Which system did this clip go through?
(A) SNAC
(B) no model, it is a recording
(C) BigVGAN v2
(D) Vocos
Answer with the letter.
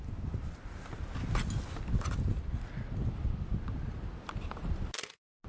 B